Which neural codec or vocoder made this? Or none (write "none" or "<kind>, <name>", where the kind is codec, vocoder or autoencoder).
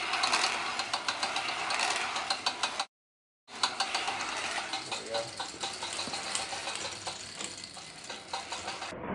none